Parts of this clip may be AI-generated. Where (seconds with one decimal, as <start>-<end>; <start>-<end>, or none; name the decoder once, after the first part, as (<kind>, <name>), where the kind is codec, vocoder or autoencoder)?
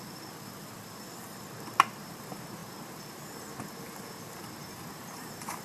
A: 0.0-5.6 (vocoder, BigVGAN v2)